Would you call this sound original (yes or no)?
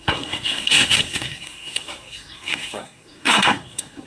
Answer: no